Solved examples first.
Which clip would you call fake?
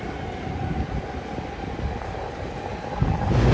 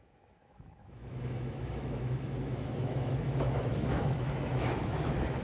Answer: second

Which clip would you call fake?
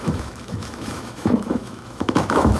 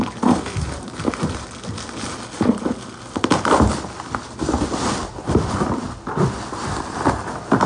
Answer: first